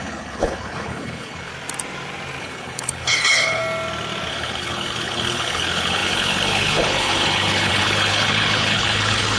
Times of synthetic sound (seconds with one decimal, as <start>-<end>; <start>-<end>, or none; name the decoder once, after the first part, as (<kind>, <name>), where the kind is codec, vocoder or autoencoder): 0.0-1.5 (codec, HILCodec); 2.4-3.6; 4.3-9.4